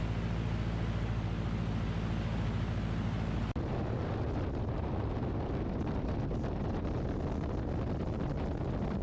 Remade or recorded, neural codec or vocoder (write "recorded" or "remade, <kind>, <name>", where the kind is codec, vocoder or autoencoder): recorded